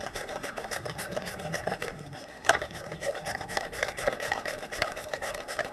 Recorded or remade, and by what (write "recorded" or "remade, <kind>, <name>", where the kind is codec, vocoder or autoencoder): remade, codec, SNAC